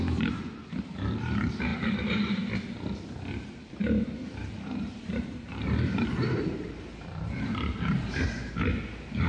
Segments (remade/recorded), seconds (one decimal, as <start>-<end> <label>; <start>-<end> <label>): 0.0-4.4 recorded; 4.4-8.2 remade; 8.2-9.3 recorded